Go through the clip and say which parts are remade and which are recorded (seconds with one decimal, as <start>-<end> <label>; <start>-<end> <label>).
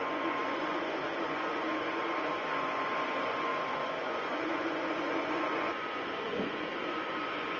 0.0-7.6 remade